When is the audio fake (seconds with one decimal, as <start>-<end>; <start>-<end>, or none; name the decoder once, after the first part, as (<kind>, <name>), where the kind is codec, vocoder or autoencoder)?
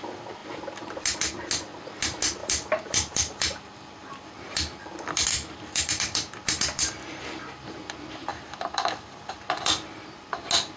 2.4-7.2 (vocoder, BigVGAN v2); 8.3-10.0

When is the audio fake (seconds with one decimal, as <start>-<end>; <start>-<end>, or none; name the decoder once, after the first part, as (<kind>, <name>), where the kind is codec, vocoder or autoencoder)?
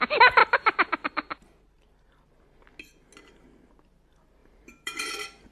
4.4-5.1 (vocoder, BigVGAN v2)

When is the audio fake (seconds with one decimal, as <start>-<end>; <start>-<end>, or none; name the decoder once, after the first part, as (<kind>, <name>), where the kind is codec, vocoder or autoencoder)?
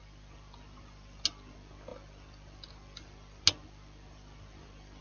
none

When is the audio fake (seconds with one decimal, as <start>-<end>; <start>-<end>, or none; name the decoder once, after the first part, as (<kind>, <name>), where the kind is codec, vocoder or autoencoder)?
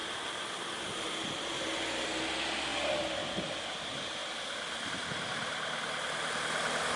0.0-0.5 (vocoder, BigVGAN v2)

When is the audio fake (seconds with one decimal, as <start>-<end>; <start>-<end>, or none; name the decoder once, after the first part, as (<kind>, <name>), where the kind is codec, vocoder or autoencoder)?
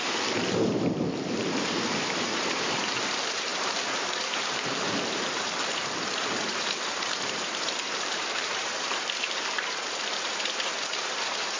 0.0-11.6 (vocoder, BigVGAN v2)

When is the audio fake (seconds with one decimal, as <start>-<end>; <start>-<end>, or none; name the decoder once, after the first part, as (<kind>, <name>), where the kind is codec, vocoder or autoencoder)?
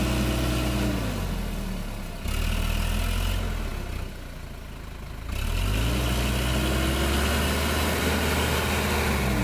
none